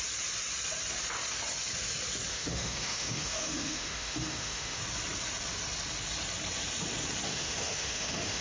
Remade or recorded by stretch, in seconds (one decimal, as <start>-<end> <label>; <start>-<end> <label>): 0.0-2.3 recorded; 2.3-4.8 remade; 4.8-7.3 recorded; 7.3-8.4 remade